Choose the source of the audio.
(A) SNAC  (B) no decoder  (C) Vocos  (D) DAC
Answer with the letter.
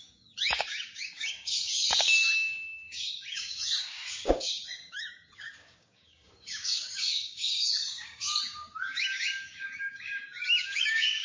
D